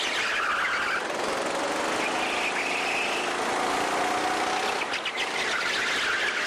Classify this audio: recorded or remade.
recorded